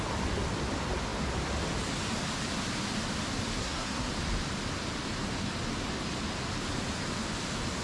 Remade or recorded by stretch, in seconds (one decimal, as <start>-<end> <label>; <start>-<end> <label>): 0.0-3.6 recorded; 3.6-4.1 remade; 4.1-7.8 recorded